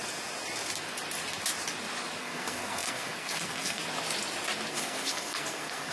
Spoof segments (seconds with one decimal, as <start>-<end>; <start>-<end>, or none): 2.2-3.8; 4.7-5.9